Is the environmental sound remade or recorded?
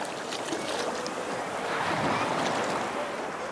recorded